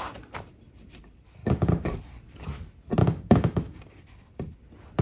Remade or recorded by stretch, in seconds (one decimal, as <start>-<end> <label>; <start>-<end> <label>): 0.0-1.4 recorded; 1.4-2.0 remade; 2.0-3.0 recorded; 3.0-4.0 remade; 4.0-5.0 recorded